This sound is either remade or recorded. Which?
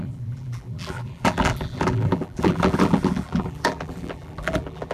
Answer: remade